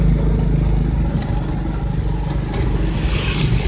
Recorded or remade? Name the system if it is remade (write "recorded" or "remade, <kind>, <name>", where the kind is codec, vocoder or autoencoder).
recorded